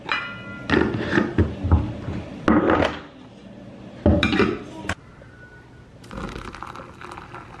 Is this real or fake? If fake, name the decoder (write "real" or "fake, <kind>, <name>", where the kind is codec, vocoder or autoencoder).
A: real